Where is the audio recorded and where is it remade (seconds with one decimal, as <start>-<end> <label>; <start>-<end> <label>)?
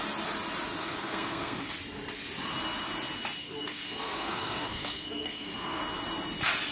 0.0-0.8 recorded; 0.8-1.7 remade; 1.7-3.4 recorded; 3.4-5.8 remade; 5.8-6.7 recorded